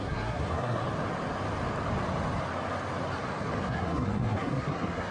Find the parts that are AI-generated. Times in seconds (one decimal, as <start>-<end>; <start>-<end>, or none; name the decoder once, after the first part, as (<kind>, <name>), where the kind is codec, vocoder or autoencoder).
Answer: 0.0-0.8 (codec, SNAC); 3.6-5.1